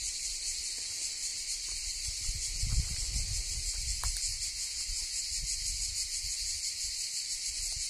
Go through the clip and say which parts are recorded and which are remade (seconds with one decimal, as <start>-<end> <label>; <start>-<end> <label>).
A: 0.0-7.9 recorded